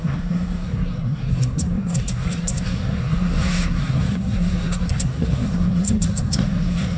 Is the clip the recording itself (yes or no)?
no